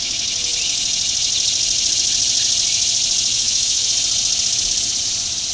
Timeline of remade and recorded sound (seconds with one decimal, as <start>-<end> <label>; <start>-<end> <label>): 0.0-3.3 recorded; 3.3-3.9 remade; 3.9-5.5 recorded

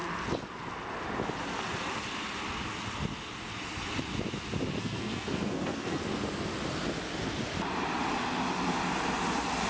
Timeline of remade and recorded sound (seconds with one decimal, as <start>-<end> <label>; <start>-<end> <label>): 0.0-4.8 recorded; 4.8-6.0 remade; 6.0-9.7 recorded

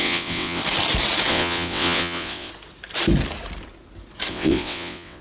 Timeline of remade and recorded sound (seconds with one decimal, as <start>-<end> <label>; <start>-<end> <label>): 0.0-0.6 remade; 0.6-1.3 recorded; 1.3-2.5 remade; 2.5-4.3 recorded; 4.3-5.2 remade